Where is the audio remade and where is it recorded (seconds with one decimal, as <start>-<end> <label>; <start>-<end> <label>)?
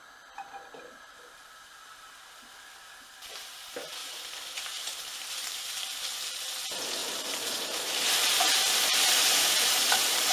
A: 0.0-4.0 recorded; 4.0-6.1 remade; 6.1-7.0 recorded; 7.0-10.3 remade